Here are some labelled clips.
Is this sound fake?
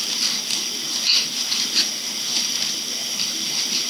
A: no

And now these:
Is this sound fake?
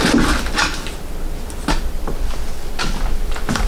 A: no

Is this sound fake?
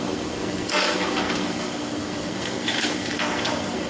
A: yes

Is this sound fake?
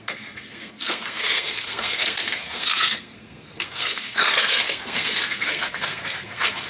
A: yes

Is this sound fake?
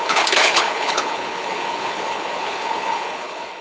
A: yes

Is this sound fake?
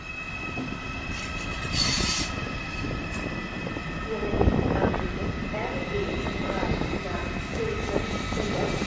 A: no